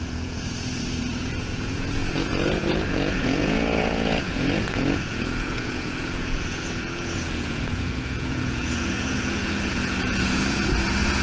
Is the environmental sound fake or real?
fake